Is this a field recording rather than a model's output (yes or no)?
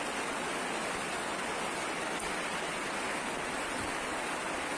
yes